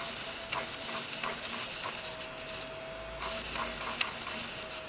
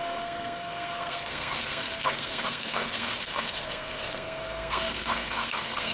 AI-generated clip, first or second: second